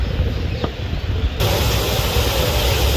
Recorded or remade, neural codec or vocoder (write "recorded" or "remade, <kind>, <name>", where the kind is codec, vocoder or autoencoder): recorded